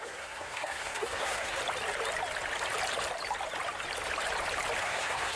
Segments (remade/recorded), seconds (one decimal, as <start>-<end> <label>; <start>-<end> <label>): 0.0-1.6 remade; 1.6-4.8 recorded; 4.8-5.4 remade